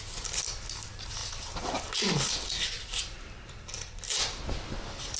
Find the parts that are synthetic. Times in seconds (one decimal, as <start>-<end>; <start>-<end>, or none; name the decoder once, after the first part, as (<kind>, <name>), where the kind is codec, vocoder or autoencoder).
none

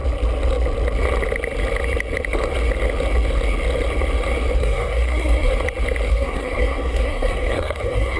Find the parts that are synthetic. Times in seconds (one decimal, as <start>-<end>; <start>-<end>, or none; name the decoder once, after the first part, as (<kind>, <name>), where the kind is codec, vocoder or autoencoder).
4.6-5.5 (codec, SNAC); 6.1-8.2

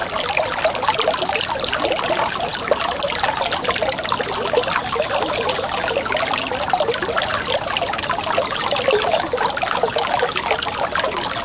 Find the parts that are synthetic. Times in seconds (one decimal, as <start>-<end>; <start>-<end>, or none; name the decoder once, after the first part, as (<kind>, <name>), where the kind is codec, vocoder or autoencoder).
none

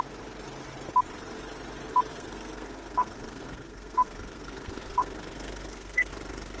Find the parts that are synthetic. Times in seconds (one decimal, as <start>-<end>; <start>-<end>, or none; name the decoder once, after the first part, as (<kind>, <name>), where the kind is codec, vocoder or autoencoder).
2.1-6.1 (codec, SNAC)

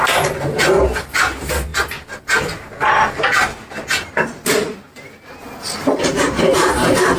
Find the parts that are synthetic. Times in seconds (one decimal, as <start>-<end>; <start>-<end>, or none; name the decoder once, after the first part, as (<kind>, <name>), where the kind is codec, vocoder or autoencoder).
none

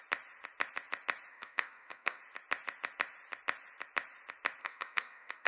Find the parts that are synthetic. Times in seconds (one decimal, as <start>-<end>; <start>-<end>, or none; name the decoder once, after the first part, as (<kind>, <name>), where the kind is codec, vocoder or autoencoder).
1.3-2.2 (codec, SNAC); 4.6-5.5

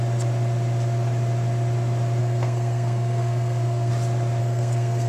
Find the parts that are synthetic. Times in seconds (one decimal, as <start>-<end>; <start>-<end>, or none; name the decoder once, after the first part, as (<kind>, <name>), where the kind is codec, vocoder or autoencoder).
2.2-3.9 (codec, SNAC); 4.4-5.1